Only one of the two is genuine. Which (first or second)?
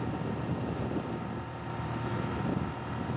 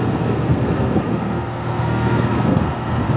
first